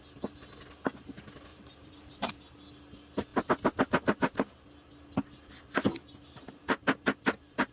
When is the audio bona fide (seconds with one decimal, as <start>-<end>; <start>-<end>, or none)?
0.0-1.5; 2.3-7.7